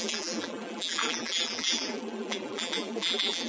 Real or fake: fake